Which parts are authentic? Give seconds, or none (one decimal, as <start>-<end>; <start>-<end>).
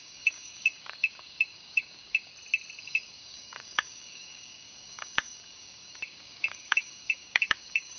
2.3-2.8